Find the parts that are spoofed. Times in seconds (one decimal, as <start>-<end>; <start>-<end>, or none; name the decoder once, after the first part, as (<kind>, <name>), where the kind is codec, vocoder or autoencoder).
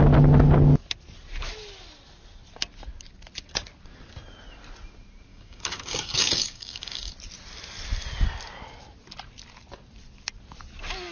5.3-7.1 (codec, DAC)